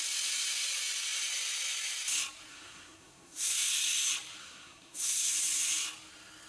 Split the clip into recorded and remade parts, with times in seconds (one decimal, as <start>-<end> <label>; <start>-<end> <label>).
0.0-2.5 recorded; 2.5-3.7 remade; 3.7-4.4 recorded; 4.4-5.3 remade; 5.3-6.5 recorded